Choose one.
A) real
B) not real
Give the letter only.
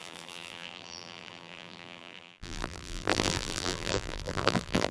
B